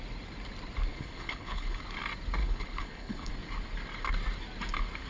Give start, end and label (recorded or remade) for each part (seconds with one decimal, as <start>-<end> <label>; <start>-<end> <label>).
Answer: 0.0-0.9 recorded; 0.9-1.8 remade; 1.8-2.4 recorded; 2.4-3.3 remade; 3.3-5.1 recorded